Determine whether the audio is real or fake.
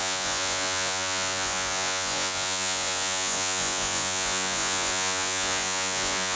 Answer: fake